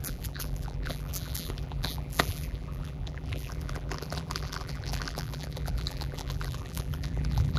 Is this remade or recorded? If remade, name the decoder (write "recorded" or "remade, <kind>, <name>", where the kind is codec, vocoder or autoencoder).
remade, vocoder, BigVGAN v2